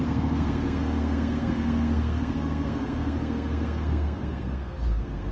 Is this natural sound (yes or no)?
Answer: no